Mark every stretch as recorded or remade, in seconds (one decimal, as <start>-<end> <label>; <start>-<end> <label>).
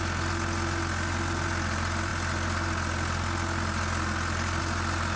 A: 0.0-5.2 recorded